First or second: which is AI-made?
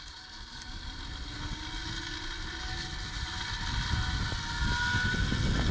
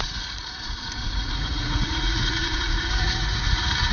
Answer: second